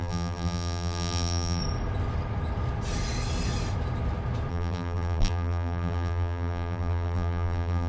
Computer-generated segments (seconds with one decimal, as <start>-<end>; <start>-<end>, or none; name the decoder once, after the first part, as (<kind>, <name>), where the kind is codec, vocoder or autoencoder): 0.0-1.6 (vocoder, BigVGAN v2); 4.5-7.9